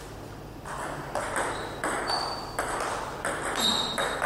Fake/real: real